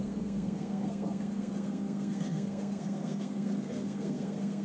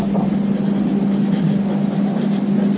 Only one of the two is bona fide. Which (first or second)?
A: second